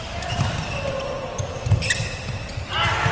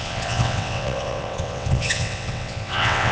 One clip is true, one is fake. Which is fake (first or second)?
second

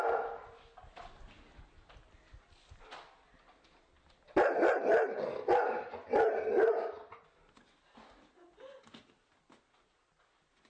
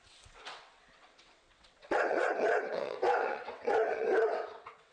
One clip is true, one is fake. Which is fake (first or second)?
second